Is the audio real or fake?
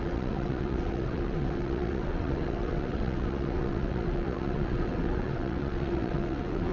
fake